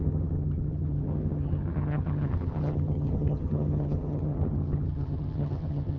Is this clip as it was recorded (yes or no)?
no